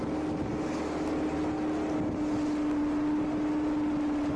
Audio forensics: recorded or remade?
recorded